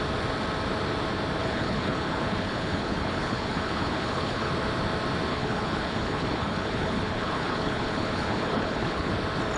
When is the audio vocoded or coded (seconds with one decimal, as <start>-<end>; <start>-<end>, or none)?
1.4-4.5; 5.3-9.1